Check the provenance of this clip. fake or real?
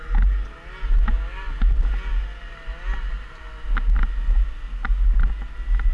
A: real